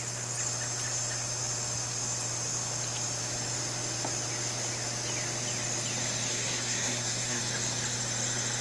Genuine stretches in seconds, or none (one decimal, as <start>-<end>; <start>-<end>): 0.0-6.3; 7.4-8.6